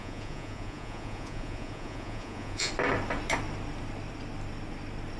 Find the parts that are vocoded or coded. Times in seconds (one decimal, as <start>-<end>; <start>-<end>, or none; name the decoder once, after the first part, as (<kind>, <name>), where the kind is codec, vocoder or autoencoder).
0.0-2.7 (vocoder, Vocos)

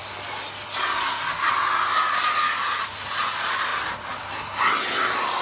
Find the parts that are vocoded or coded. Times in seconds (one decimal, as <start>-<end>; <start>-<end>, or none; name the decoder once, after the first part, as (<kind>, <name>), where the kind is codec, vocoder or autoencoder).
none

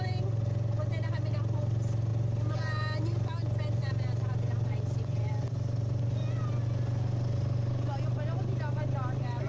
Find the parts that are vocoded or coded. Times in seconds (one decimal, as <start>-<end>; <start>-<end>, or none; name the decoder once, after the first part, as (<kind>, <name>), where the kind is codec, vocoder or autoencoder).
none

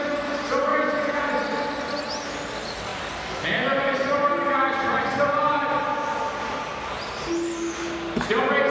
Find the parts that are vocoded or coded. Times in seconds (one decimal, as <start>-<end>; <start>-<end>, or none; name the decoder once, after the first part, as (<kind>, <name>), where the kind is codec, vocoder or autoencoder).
0.7-1.3 (vocoder, Vocos)

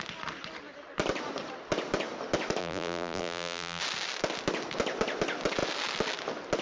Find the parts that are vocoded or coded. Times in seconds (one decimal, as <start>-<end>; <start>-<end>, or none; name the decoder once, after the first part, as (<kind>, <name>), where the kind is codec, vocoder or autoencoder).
2.6-3.8 (vocoder, BigVGAN v2)

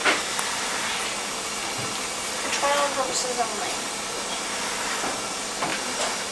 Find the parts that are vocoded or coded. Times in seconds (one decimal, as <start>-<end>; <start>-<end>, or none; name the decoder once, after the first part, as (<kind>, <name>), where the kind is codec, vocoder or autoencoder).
3.6-4.6 (vocoder, BigVGAN v2); 5.7-6.3

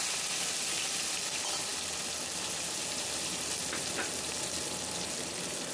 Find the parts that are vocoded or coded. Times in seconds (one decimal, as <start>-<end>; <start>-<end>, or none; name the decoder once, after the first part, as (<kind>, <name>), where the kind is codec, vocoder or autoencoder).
2.8-3.9 (vocoder, BigVGAN v2)